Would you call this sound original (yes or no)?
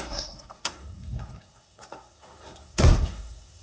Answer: no